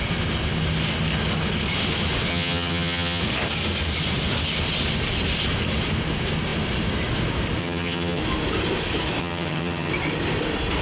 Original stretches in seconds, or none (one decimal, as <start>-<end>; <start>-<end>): 0.0-2.3; 3.2-7.6; 8.2-9.2; 9.9-10.8